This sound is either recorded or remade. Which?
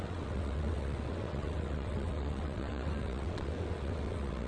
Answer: remade